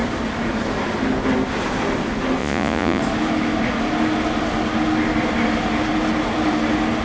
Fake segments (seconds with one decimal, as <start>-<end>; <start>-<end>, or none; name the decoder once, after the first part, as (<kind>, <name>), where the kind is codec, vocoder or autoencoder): 2.4-3.0 (vocoder, Vocos)